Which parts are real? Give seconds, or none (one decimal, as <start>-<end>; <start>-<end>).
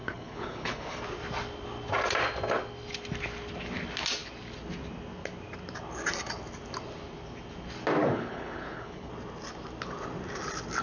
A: 1.0-8.0; 9.1-10.8